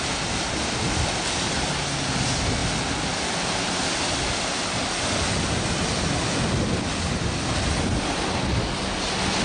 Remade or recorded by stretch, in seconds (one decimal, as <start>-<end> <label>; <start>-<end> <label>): 0.0-9.4 recorded